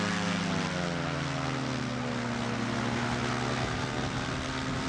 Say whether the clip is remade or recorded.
recorded